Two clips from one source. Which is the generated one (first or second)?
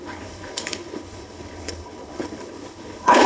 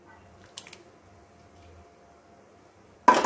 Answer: first